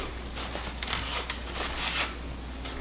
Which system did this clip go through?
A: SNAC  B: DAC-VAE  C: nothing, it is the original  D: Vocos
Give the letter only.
C